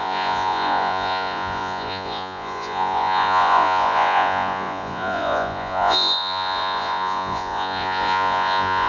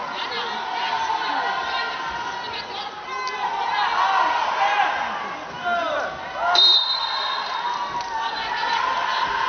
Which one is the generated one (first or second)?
first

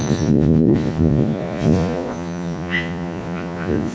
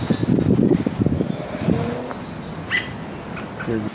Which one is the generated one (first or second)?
first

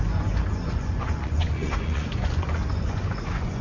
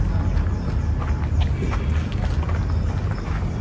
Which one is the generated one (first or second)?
first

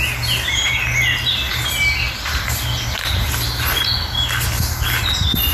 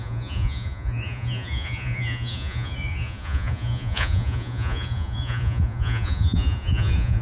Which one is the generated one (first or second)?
second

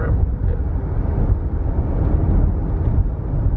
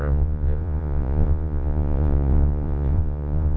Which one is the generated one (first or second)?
second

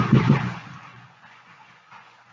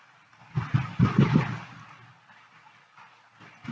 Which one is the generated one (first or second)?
first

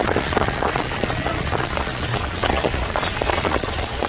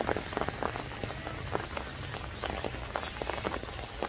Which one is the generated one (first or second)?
first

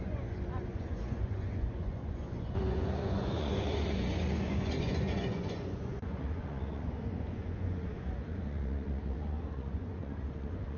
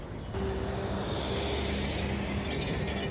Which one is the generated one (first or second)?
first